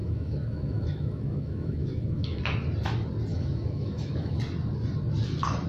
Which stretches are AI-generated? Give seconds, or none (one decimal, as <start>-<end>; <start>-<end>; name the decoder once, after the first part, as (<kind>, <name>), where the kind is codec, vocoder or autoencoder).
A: 0.0-2.4 (autoencoder, DAC-VAE); 3.3-4.4